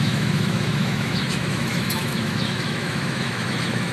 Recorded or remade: remade